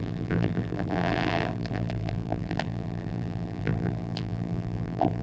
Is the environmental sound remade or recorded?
remade